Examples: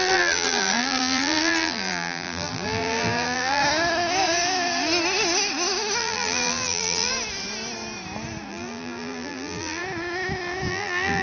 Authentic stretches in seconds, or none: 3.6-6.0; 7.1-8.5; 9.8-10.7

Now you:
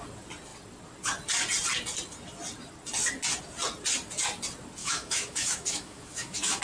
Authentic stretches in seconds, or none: 0.0-4.8

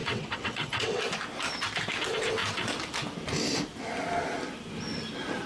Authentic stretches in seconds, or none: 1.0-5.5

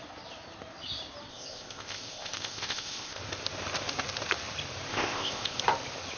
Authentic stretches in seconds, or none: 0.0-1.3; 3.2-4.9; 5.6-6.2

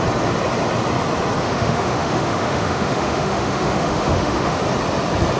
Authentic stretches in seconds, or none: 0.0-1.4; 4.6-5.4